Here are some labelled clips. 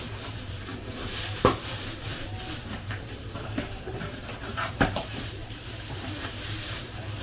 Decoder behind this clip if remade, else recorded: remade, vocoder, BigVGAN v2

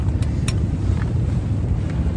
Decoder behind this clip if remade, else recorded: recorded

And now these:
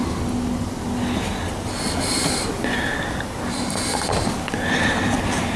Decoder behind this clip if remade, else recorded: recorded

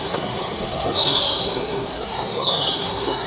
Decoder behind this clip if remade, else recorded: remade, codec, SNAC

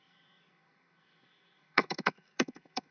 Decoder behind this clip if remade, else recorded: remade, codec, SNAC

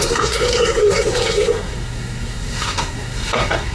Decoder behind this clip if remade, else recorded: remade, codec, SNAC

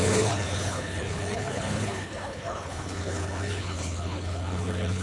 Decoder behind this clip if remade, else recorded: remade, codec, HILCodec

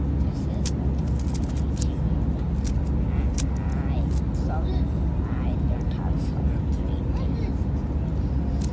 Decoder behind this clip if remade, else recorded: recorded